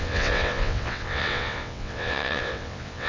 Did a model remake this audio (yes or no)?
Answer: yes